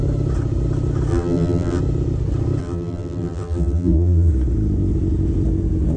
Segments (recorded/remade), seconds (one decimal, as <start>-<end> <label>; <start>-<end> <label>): 0.0-1.1 recorded; 1.1-1.8 remade; 1.8-2.6 recorded; 2.6-4.3 remade; 4.3-6.0 recorded